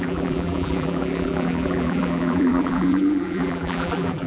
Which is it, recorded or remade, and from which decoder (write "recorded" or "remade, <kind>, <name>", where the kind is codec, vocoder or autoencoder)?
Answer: remade, vocoder, BigVGAN v2